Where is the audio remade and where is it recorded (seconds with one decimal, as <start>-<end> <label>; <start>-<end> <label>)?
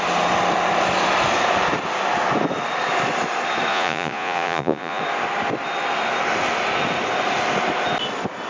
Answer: 0.0-3.7 recorded; 3.7-5.0 remade; 5.0-8.5 recorded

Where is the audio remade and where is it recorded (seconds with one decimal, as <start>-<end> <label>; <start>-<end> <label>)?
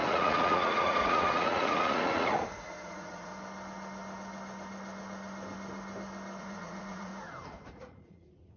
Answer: 0.0-3.3 remade; 3.3-6.4 recorded; 6.4-7.1 remade; 7.1-7.7 recorded; 7.7-8.6 remade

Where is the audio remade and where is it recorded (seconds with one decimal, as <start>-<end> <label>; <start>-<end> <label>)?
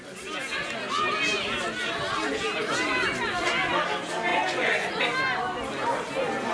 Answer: 0.0-4.3 recorded; 4.3-5.0 remade; 5.0-6.5 recorded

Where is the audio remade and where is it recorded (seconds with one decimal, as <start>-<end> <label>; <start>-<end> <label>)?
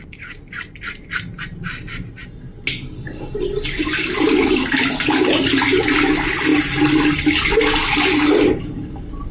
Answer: 0.0-9.3 recorded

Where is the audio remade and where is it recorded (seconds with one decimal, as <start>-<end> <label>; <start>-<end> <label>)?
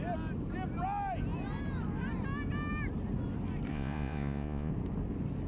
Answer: 0.0-3.7 recorded; 3.7-4.7 remade; 4.7-5.5 recorded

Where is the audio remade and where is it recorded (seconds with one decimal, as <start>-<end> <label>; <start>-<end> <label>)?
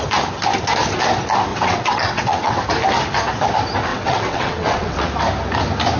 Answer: 0.0-1.5 recorded; 1.5-2.6 remade; 2.6-3.9 recorded; 3.9-5.1 remade; 5.1-6.0 recorded